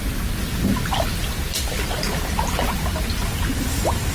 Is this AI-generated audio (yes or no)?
no